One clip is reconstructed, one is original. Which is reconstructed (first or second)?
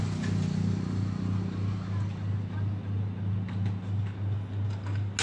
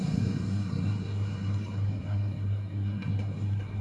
second